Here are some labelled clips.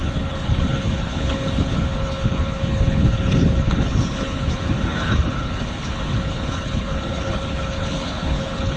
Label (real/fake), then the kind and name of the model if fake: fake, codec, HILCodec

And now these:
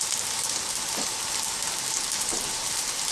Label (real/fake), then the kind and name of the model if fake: real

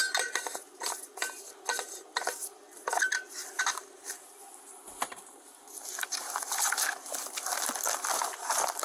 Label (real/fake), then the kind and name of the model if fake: real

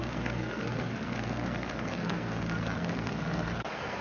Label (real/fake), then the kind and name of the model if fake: fake, codec, SNAC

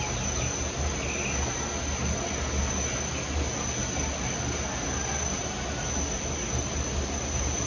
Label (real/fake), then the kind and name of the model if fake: real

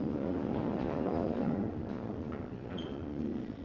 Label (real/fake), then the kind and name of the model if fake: fake, vocoder, Vocos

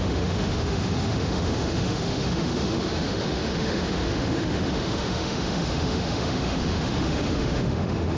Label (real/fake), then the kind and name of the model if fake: fake, autoencoder, DAC-VAE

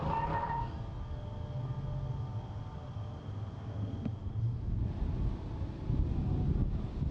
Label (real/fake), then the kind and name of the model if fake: real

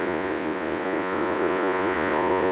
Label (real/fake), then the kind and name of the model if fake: fake, vocoder, Vocos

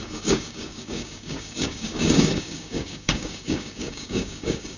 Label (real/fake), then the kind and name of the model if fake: fake, codec, DAC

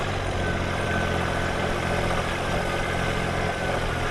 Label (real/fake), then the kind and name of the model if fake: fake, vocoder, BigVGAN v2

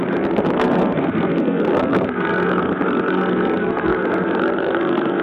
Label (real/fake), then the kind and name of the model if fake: fake, codec, SNAC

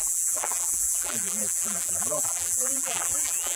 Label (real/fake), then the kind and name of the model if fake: fake, vocoder, BigVGAN v2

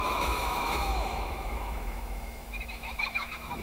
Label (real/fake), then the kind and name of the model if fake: fake, autoencoder, DAC-VAE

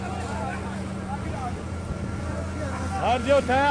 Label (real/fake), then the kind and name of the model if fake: real